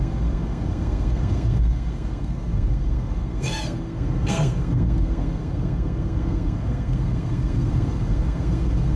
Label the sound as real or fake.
fake